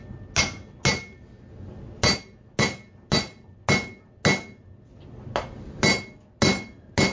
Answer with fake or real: real